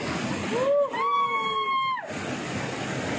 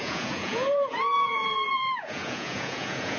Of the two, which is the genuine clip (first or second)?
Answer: first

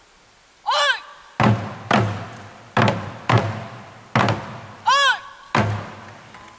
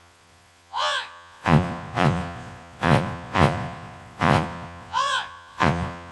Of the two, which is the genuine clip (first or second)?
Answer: first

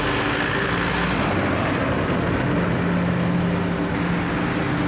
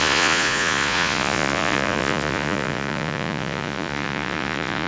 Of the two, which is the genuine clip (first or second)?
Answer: first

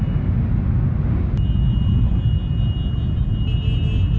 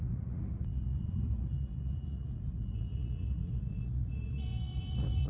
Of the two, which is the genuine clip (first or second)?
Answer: first